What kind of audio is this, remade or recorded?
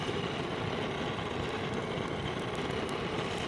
recorded